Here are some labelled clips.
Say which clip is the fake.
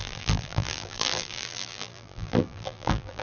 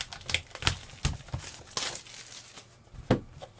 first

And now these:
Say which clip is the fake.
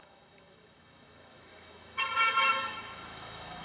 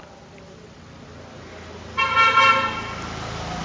first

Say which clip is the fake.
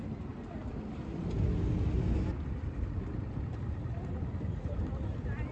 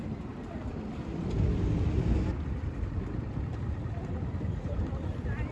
second